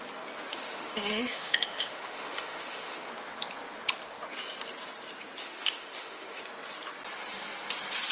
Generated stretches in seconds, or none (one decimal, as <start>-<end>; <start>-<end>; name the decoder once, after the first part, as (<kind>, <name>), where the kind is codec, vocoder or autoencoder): 0.5-3.1 (autoencoder, DAC-VAE); 5.4-6.4